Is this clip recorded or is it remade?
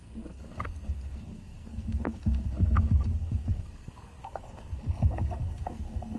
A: remade